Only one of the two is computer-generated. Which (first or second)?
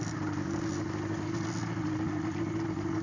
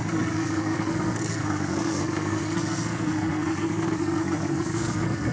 second